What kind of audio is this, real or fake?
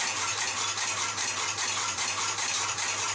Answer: fake